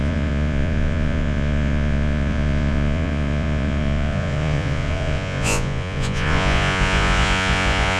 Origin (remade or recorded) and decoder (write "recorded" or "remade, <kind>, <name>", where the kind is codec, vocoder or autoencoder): remade, vocoder, Vocos